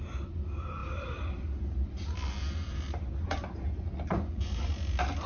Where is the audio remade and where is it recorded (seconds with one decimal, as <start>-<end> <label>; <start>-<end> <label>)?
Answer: 0.0-4.1 recorded; 4.1-4.7 remade; 4.7-5.3 recorded